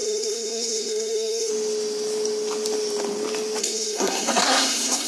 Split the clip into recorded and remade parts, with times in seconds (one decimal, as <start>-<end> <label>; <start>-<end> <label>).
0.0-1.5 remade; 1.5-3.6 recorded; 3.6-5.1 remade